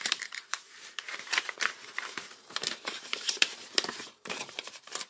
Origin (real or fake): fake